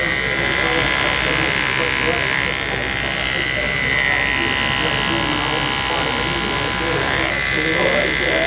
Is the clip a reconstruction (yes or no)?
no